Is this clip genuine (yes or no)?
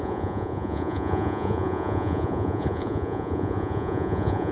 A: no